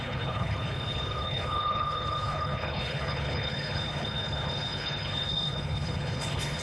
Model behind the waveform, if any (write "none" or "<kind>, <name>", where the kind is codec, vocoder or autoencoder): codec, HILCodec